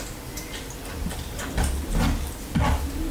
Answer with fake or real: real